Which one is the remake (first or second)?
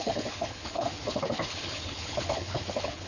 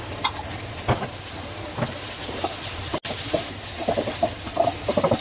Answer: first